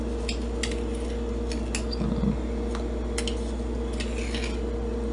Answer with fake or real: real